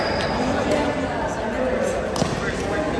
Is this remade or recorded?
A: recorded